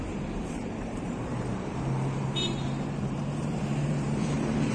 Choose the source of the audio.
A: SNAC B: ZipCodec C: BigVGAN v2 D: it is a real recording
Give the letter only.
C